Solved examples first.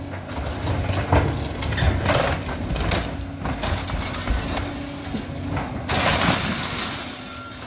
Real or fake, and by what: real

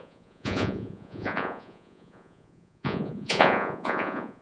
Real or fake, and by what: fake, vocoder, Vocos